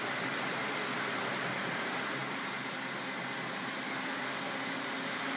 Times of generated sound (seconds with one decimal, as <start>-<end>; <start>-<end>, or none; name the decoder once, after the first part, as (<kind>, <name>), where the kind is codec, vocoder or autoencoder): none